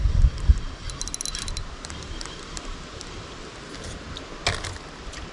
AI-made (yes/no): no